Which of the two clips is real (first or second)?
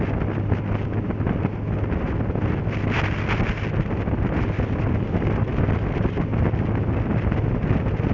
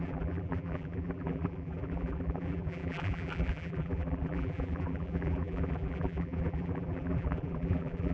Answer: first